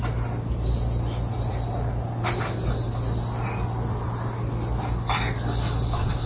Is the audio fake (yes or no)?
no